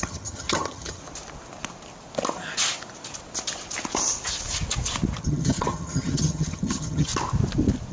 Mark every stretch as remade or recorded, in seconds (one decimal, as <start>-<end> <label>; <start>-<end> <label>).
0.0-1.0 remade; 1.0-5.2 recorded; 5.2-7.1 remade; 7.1-7.9 recorded